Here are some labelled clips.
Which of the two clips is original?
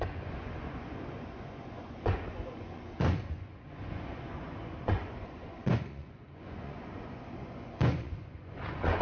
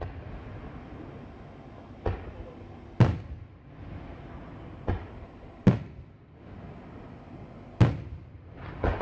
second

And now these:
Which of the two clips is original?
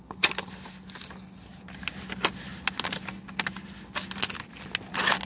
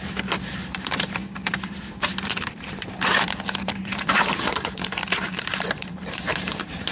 first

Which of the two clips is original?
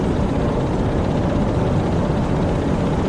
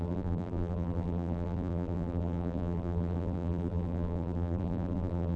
first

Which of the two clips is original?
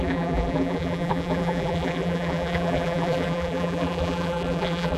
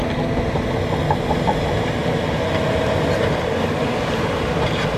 second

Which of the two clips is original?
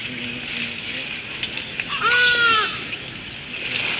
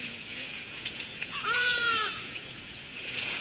first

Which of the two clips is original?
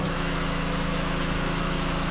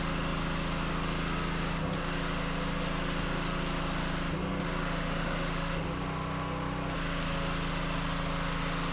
second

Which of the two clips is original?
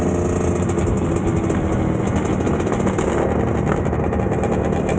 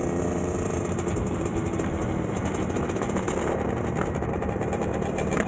first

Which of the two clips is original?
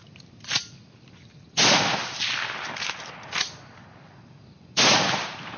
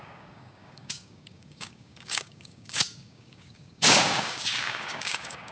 first